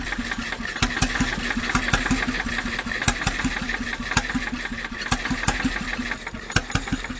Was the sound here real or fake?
real